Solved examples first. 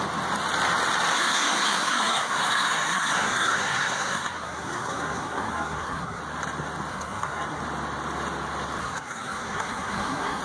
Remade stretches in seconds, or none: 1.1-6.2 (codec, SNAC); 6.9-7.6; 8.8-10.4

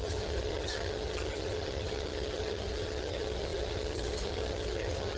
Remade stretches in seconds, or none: 0.0-5.2 (vocoder, HiFi-GAN)

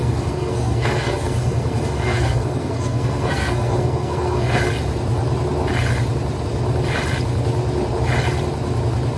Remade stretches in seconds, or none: 0.0-4.6 (codec, SNAC)

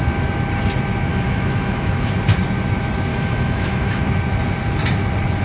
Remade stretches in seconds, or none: 1.1-2.1 (autoencoder, DAC-VAE); 3.1-4.0